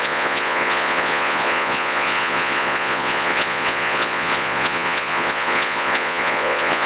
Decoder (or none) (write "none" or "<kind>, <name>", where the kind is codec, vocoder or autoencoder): vocoder, Vocos